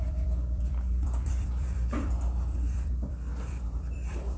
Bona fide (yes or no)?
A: no